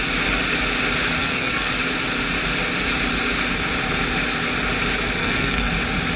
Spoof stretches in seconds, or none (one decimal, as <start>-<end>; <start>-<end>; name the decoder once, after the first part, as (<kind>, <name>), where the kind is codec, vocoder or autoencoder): 1.2-1.7 (codec, SNAC); 5.2-5.7